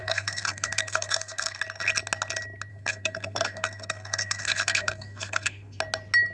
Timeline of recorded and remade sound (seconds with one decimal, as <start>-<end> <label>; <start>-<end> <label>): 0.0-1.6 remade; 1.6-2.7 recorded; 2.7-5.8 remade; 5.8-6.3 recorded